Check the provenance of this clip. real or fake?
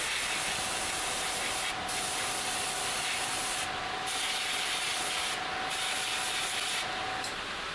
real